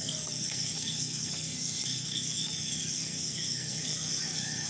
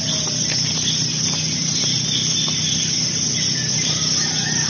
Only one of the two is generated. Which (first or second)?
first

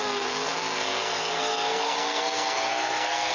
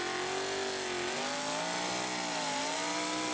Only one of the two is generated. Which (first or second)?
first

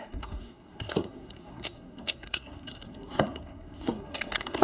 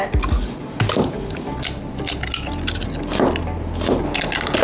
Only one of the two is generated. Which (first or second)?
first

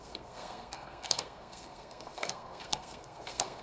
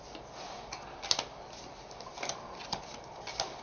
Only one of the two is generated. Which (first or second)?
first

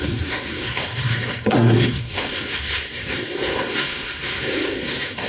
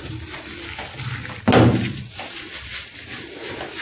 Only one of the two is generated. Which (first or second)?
first